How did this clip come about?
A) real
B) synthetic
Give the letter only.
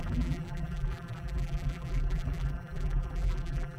B